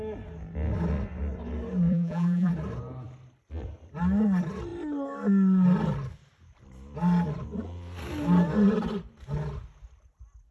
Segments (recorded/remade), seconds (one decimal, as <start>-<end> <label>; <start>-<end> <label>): 0.0-1.9 recorded; 1.9-2.5 remade; 2.5-10.5 recorded